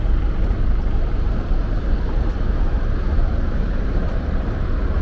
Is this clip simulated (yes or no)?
yes